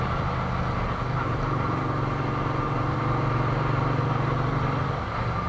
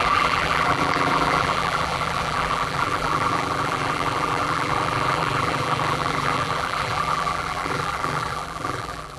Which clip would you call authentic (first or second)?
first